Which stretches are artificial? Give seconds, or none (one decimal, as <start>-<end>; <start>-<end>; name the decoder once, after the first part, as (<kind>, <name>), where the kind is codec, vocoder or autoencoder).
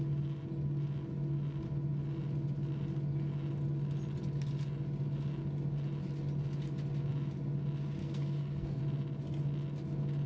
8.0-8.8 (codec, SNAC)